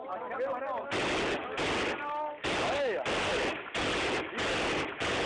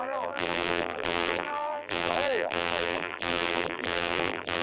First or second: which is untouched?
first